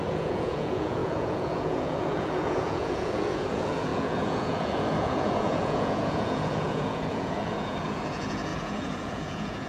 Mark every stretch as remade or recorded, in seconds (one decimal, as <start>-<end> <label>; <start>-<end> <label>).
0.0-9.7 remade